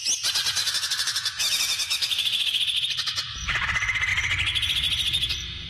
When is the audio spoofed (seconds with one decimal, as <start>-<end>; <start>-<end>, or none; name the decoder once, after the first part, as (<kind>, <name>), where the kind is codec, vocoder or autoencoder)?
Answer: 0.6-2.6 (autoencoder, DAC-VAE)